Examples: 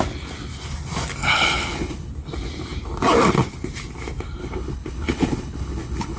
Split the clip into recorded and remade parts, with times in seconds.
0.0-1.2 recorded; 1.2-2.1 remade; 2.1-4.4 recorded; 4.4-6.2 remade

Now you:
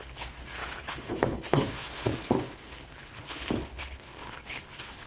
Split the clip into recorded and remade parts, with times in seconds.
0.0-5.1 remade

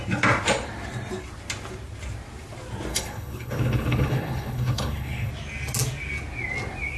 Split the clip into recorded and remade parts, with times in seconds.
0.0-2.9 recorded; 2.9-5.3 remade; 5.3-7.0 recorded

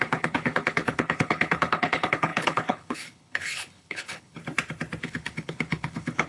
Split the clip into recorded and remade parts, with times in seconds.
0.0-4.4 remade; 4.4-5.0 recorded; 5.0-6.3 remade

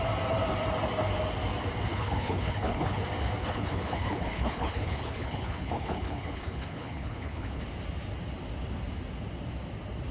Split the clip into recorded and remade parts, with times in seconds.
0.0-1.9 recorded; 1.9-3.0 remade; 3.0-3.4 recorded; 3.4-7.6 remade; 7.6-10.1 recorded